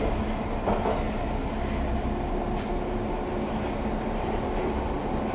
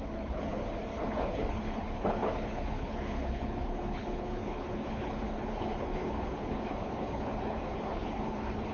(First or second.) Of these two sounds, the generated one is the second